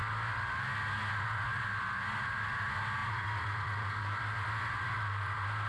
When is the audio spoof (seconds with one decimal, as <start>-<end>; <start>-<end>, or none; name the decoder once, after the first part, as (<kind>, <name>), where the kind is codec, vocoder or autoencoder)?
none